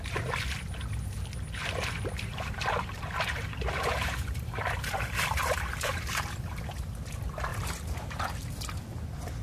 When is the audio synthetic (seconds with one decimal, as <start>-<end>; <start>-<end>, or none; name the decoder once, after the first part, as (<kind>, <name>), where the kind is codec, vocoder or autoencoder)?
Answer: 1.6-6.1 (vocoder, BigVGAN v2); 7.5-8.6